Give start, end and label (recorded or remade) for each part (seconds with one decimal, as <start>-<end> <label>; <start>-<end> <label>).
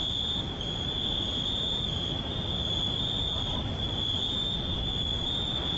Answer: 0.0-5.8 remade